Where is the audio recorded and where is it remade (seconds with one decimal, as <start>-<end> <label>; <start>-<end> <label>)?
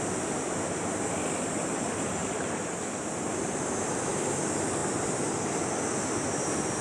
0.0-6.8 recorded